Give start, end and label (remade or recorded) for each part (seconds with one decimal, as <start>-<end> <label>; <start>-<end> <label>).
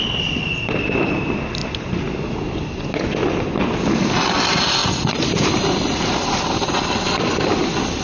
0.0-1.6 recorded; 1.6-2.1 remade; 2.1-4.8 recorded; 4.8-5.5 remade; 5.5-8.0 recorded